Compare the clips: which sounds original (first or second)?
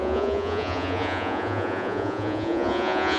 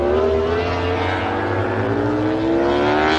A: second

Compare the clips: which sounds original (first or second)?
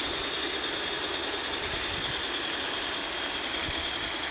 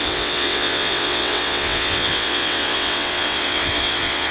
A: first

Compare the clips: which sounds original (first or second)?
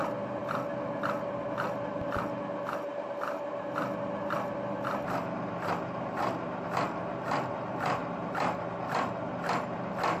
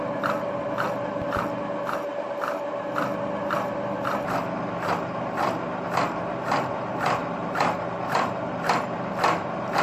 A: first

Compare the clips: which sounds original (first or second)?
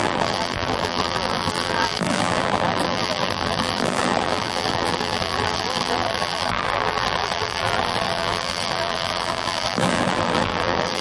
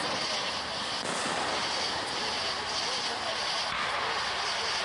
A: second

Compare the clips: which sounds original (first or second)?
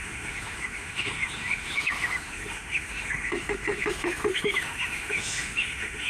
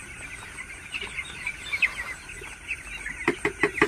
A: second